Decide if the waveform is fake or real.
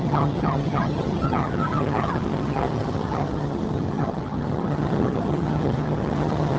fake